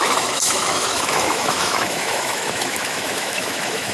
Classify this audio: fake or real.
fake